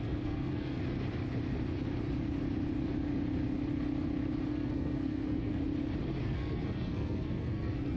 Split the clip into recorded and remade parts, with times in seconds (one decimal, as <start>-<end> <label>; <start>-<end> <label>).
0.0-0.8 remade; 0.8-4.5 recorded; 4.5-5.6 remade; 5.6-6.2 recorded; 6.2-8.0 remade